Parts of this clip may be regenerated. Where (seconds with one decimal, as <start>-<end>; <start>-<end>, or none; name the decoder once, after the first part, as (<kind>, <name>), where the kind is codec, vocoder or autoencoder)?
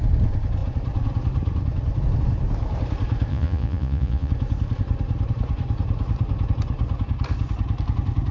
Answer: 3.3-4.3 (vocoder, Vocos)